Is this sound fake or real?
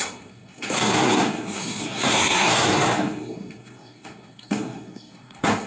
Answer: fake